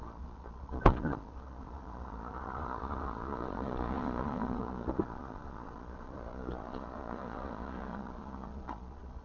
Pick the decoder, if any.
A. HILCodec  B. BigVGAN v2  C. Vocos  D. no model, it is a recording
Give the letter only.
C